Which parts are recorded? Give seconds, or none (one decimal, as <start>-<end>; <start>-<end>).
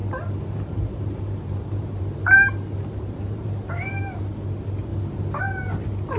3.7-6.2